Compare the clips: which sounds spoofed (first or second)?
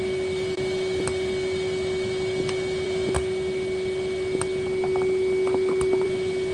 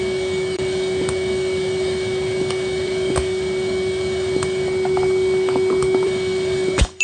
second